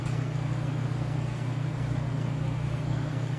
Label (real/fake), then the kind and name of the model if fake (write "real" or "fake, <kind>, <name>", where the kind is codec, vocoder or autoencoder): fake, codec, SNAC